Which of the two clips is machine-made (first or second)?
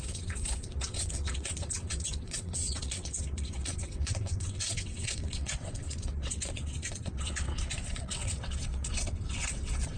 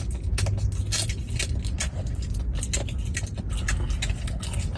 first